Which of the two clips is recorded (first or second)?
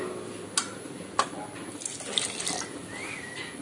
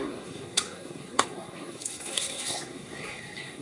first